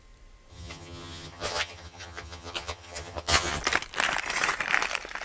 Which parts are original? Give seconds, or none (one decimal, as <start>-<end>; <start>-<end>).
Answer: 0.0-0.5; 3.6-5.2